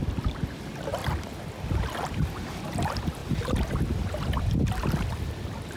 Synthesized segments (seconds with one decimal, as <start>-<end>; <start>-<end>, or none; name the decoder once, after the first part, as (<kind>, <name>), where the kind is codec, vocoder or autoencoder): none